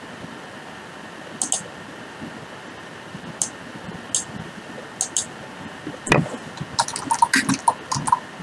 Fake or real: real